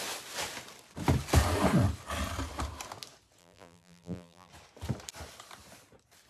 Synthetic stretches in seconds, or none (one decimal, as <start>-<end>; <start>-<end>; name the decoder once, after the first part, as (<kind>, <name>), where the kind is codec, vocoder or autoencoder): 3.4-4.5 (vocoder, BigVGAN v2)

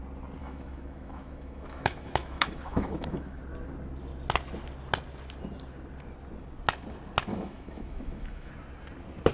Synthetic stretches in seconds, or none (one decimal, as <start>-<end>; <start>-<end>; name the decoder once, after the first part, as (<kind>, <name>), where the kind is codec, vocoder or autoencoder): 0.4-3.4 (autoencoder, DAC-VAE); 7.3-8.5